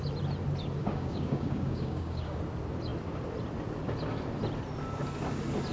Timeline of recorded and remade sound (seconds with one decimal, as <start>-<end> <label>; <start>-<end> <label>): 0.0-0.8 recorded; 0.8-2.4 remade; 2.4-5.7 recorded